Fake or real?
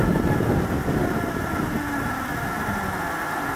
real